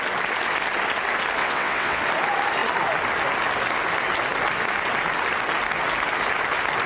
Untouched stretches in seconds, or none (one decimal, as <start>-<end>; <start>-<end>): 0.0-1.4; 2.0-6.9

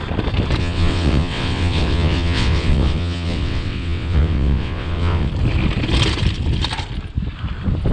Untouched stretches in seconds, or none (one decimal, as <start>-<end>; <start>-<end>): 0.0-0.6; 5.3-7.9